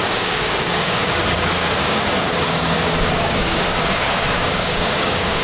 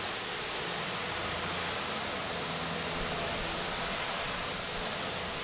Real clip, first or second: second